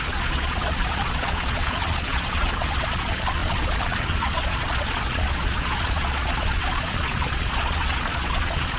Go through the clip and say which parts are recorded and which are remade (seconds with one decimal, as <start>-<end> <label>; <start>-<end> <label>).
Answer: 0.0-8.8 remade